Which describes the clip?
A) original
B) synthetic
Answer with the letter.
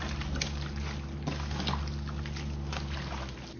A